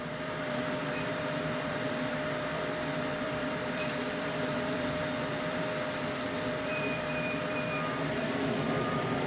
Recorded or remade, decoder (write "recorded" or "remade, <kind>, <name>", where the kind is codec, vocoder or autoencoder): remade, vocoder, BigVGAN v2